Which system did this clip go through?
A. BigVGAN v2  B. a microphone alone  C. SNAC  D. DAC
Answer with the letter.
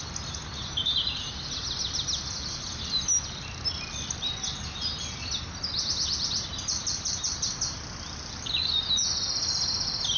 B